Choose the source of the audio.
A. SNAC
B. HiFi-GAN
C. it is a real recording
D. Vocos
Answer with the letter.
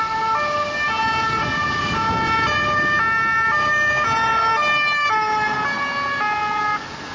C